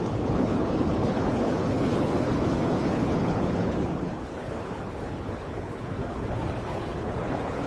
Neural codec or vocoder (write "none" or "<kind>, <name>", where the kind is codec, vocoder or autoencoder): codec, HILCodec